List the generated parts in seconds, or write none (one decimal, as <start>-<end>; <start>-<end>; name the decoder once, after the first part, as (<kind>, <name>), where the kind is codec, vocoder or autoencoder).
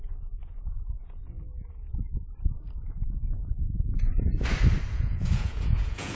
0.0-1.2 (vocoder, Vocos); 4.9-6.2